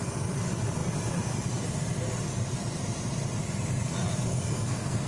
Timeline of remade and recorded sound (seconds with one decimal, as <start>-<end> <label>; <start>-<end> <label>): 0.0-4.3 recorded; 4.3-5.1 remade